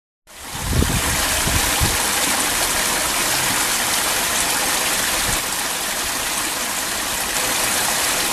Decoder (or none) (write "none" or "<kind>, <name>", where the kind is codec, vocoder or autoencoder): none